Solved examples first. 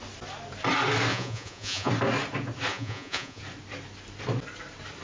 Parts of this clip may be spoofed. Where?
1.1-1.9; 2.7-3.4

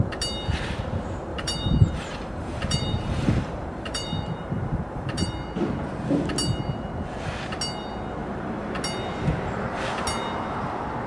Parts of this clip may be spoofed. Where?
1.3-5.3; 8.2-8.7

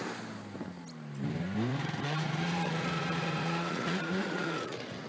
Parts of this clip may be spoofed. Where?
1.7-5.1

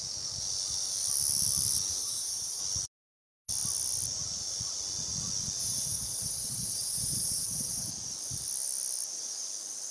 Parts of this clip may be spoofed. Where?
2.0-2.6; 5.6-7.9

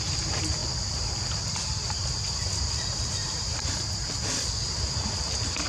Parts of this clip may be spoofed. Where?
3.2-3.9

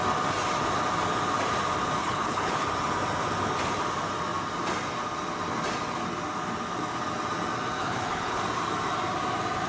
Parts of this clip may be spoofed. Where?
2.0-2.7; 7.8-8.4

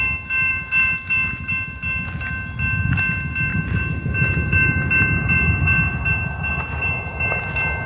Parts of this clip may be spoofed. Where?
0.5-1.5; 3.5-7.5

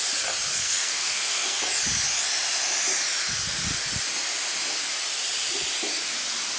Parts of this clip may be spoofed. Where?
0.5-1.6